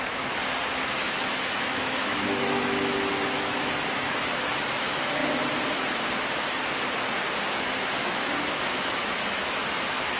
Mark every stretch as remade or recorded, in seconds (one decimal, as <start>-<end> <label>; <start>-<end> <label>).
0.0-0.4 remade; 0.4-1.2 recorded; 1.2-5.2 remade; 5.2-8.0 recorded; 8.0-10.2 remade